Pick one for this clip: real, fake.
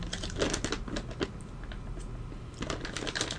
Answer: real